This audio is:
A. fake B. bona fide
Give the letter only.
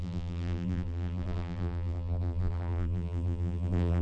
A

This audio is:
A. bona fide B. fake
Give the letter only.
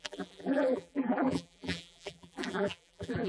B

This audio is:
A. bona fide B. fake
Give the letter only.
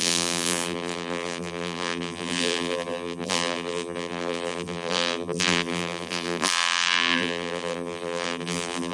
B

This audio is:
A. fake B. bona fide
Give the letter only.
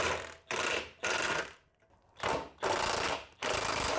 A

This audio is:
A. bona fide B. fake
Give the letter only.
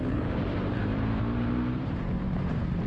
B